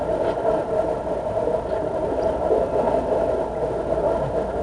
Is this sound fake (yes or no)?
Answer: no